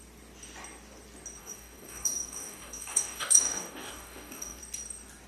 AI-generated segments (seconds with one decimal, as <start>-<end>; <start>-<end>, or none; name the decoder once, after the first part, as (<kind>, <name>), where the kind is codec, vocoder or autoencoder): 1.4-4.6 (codec, DAC)